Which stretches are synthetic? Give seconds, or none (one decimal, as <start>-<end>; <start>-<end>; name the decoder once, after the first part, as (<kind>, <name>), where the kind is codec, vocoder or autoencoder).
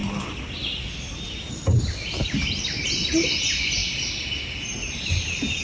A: none